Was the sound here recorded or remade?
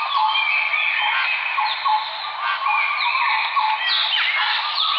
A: recorded